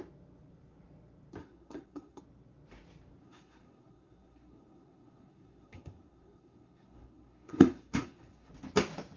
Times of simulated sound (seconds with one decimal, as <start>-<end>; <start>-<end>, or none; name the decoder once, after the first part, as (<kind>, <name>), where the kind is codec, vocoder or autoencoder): 1.4-2.2 (codec, SNAC); 3.2-8.5